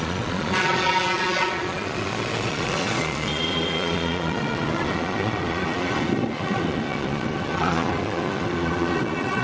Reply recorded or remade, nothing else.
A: remade